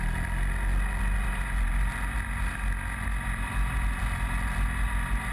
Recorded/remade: recorded